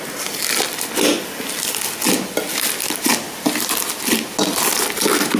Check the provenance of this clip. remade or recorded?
recorded